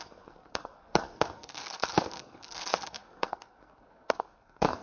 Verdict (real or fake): fake